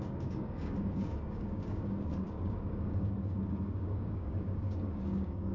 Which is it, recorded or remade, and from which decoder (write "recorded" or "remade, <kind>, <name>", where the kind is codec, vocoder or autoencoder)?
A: remade, codec, DAC